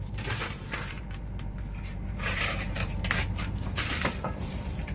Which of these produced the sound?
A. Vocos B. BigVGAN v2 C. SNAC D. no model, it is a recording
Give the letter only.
B